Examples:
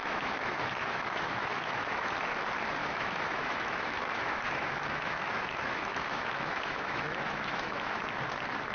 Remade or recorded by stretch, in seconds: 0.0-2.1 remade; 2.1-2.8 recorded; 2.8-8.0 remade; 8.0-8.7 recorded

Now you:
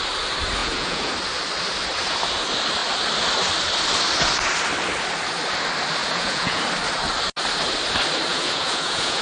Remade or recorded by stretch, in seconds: 0.0-0.6 recorded; 0.6-1.1 remade; 1.1-6.0 recorded; 6.0-6.6 remade; 6.6-8.3 recorded; 8.3-9.2 remade

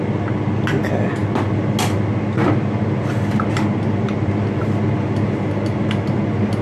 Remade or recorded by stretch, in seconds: 0.0-6.6 recorded